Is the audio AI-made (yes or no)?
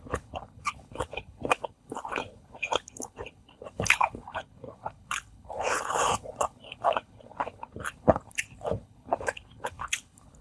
yes